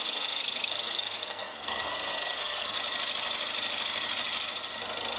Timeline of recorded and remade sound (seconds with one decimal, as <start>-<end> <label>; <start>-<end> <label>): 0.0-2.8 remade; 2.8-5.2 recorded